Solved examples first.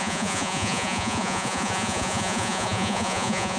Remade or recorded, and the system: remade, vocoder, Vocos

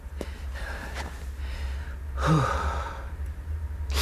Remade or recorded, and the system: recorded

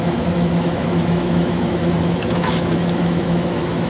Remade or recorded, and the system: remade, autoencoder, DAC-VAE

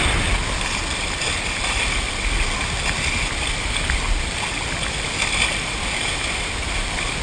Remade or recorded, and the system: recorded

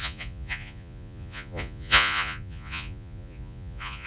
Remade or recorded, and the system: remade, vocoder, Vocos